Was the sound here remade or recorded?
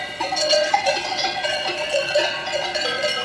remade